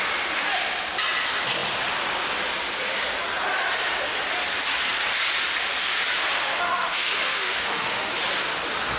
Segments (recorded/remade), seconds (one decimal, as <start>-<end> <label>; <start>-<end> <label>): 0.0-6.4 recorded; 6.4-8.1 remade; 8.1-9.0 recorded